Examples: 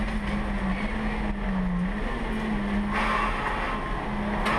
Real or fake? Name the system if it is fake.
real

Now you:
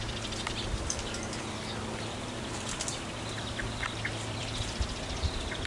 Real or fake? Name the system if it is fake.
fake, vocoder, BigVGAN v2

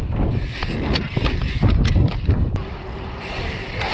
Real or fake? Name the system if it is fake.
real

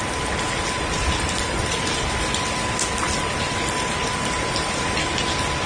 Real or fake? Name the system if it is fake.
real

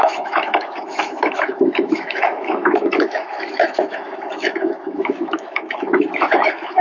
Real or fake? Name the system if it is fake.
fake, autoencoder, DAC-VAE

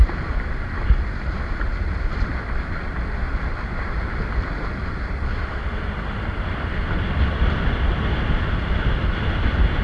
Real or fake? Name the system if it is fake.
fake, vocoder, BigVGAN v2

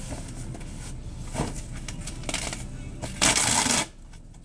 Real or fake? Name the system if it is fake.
real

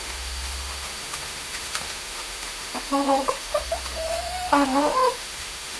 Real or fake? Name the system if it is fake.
fake, autoencoder, DAC-VAE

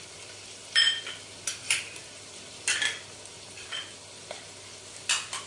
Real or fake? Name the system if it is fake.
real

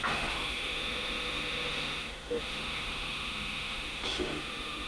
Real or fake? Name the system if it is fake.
fake, autoencoder, DAC-VAE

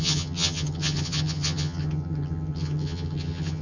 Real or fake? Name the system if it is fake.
fake, vocoder, HiFi-GAN